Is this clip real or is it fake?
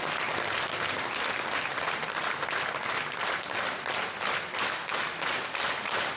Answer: real